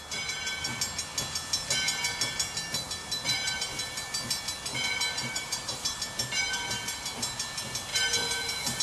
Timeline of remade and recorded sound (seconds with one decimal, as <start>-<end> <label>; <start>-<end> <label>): 0.0-3.0 recorded; 3.0-3.5 remade; 3.5-5.2 recorded; 5.2-6.0 remade; 6.0-8.8 recorded